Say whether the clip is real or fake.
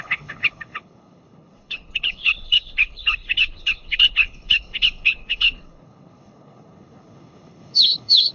fake